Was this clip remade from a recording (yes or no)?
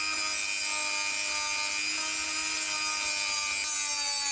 no